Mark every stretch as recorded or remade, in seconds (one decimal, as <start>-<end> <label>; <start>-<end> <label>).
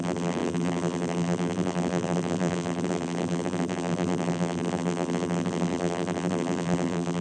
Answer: 0.0-7.2 remade